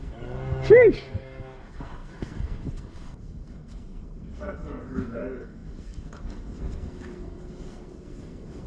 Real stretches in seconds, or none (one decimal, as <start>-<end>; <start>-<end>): none